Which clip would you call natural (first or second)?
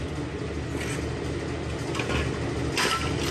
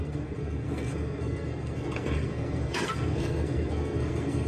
first